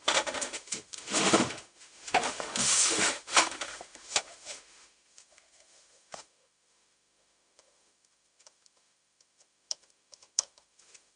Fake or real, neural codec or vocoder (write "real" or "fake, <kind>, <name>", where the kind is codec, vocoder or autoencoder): fake, autoencoder, DAC-VAE